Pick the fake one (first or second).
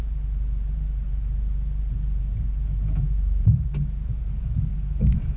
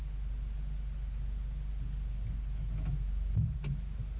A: first